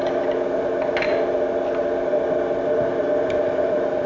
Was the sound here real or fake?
real